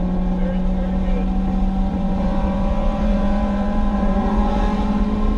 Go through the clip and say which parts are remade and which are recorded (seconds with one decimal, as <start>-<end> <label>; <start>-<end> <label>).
0.0-1.9 recorded; 1.9-4.5 remade; 4.5-5.4 recorded